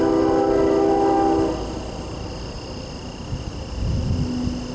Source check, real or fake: real